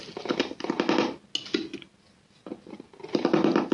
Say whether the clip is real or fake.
real